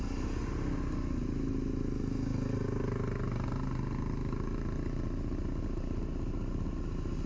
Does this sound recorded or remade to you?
recorded